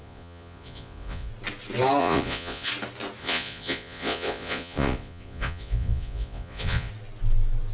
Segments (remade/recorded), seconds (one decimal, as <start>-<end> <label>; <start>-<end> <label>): 0.0-1.3 remade; 1.3-2.0 recorded; 2.0-2.7 remade; 2.7-3.2 recorded; 3.2-6.9 remade; 6.9-7.7 recorded